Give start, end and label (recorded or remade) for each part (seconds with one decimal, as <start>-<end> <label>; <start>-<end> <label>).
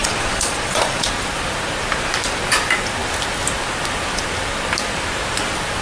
0.0-1.1 remade; 1.1-5.8 recorded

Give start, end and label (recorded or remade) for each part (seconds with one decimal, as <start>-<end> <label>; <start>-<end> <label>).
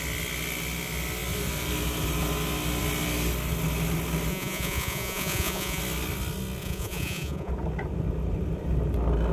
0.0-4.3 recorded; 4.3-5.8 remade; 5.8-6.6 recorded; 6.6-7.5 remade; 7.5-9.3 recorded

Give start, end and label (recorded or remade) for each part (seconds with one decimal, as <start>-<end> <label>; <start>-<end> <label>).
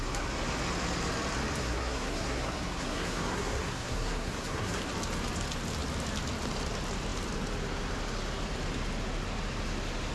0.0-1.6 recorded; 1.6-4.8 remade; 4.8-10.1 recorded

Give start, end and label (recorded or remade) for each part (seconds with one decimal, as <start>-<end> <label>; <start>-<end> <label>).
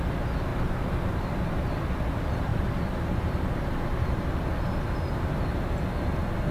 0.0-0.5 recorded; 0.5-1.2 remade; 1.2-2.5 recorded; 2.5-5.1 remade; 5.1-6.5 recorded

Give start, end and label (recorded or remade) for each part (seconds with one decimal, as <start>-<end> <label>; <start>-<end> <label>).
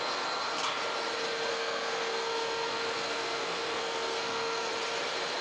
0.0-1.5 recorded; 1.5-4.7 remade; 4.7-5.4 recorded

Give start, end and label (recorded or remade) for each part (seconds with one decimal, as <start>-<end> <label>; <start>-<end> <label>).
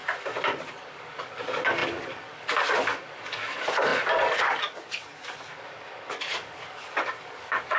0.0-0.7 recorded; 0.7-7.8 remade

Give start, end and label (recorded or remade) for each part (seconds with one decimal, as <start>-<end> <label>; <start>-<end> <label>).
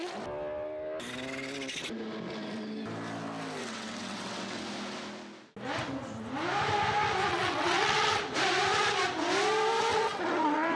0.0-3.6 recorded; 3.6-4.6 remade; 4.6-7.3 recorded; 7.3-8.2 remade; 8.2-9.9 recorded; 9.9-10.8 remade